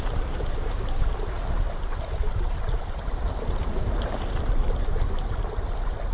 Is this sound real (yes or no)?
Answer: yes